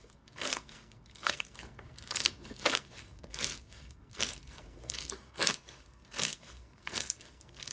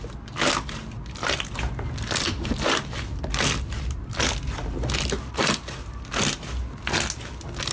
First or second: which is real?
second